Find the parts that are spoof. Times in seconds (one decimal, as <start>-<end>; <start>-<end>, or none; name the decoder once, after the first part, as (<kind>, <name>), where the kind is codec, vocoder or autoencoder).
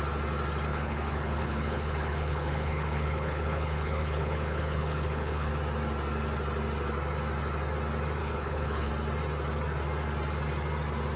0.7-5.5 (codec, HILCodec); 8.2-8.9